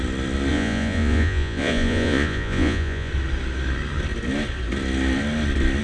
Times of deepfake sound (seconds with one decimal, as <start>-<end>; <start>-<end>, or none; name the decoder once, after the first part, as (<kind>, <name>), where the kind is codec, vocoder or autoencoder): 0.5-3.1 (vocoder, Vocos)